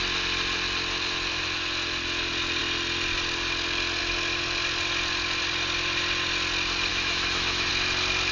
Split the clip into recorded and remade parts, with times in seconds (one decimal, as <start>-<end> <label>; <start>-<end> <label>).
0.0-6.9 recorded; 6.9-7.7 remade; 7.7-8.3 recorded